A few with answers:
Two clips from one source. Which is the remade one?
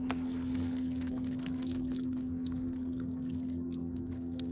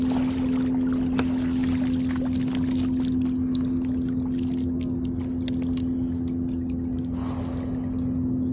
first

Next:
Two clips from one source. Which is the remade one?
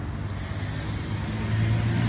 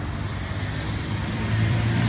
second